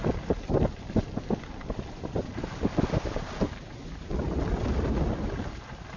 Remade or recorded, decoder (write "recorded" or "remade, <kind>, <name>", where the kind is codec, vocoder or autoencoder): recorded